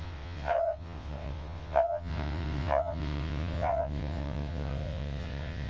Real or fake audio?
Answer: fake